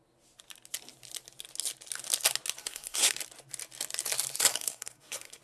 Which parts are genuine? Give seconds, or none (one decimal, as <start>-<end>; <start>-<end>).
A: 0.0-2.6; 3.2-4.5